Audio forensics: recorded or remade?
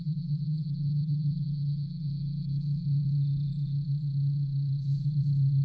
remade